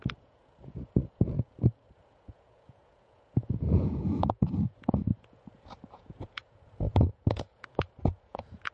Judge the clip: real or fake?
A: fake